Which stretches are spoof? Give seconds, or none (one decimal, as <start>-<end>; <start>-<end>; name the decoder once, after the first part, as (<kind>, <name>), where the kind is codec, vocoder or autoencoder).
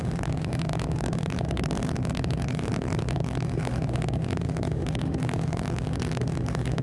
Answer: 0.0-6.8 (autoencoder, DAC-VAE)